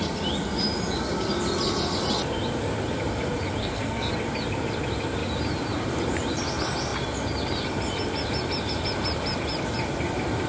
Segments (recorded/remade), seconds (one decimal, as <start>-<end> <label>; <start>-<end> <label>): 0.0-3.6 recorded; 3.6-4.1 remade; 4.1-10.5 recorded